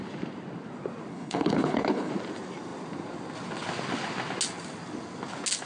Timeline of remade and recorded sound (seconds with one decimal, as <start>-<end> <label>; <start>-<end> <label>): 0.0-1.1 recorded; 1.1-2.1 remade; 2.1-5.7 recorded